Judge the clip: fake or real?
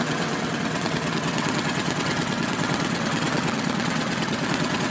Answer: fake